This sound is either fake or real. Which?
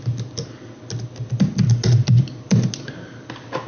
real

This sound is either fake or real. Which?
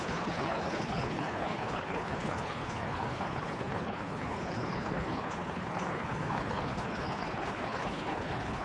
fake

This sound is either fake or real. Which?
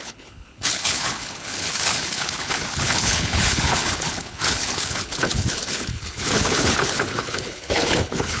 fake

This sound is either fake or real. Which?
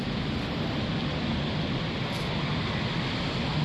real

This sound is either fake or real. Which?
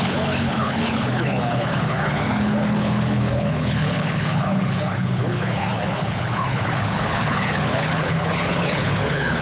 fake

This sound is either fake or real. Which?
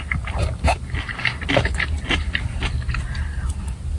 real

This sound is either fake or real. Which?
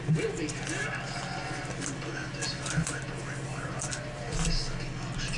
real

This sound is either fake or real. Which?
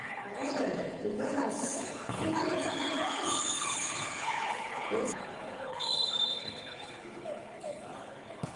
fake